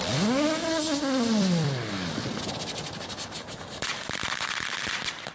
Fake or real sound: fake